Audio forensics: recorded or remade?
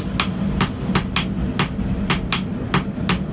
recorded